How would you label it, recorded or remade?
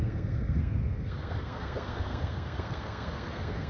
remade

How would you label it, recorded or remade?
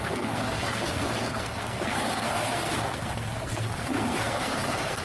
remade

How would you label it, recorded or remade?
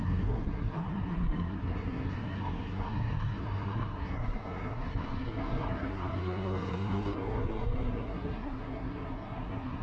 remade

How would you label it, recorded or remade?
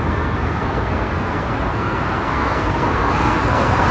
remade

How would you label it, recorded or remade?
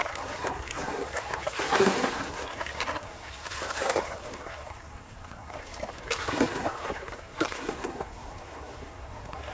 remade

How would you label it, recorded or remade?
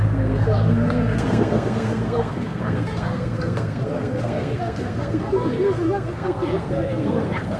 remade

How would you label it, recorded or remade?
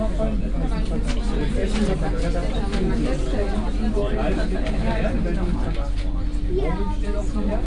recorded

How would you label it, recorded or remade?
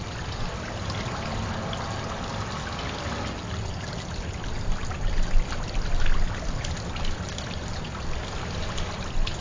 recorded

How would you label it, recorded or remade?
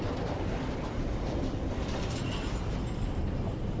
recorded